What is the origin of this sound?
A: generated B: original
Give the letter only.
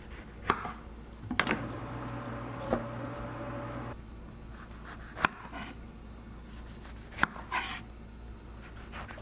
B